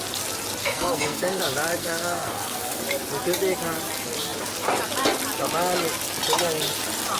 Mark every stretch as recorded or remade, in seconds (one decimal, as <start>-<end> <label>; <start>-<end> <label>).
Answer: 0.0-0.6 recorded; 0.6-1.4 remade; 1.4-1.8 recorded; 1.8-2.8 remade; 2.8-7.2 recorded